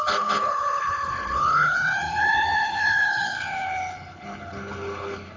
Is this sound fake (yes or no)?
yes